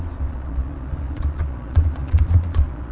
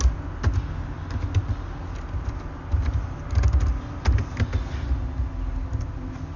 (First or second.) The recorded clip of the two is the second